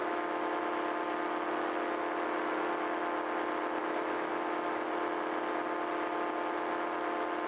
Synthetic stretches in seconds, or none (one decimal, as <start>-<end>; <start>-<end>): 0.0-0.6; 3.8-4.9